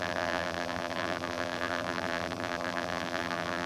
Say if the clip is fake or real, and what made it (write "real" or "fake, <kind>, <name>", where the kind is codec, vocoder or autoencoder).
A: fake, vocoder, BigVGAN v2